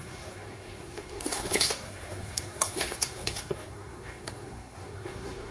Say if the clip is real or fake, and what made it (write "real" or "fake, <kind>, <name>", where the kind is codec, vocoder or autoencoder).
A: fake, codec, SNAC